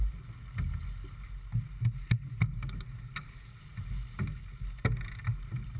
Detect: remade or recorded recorded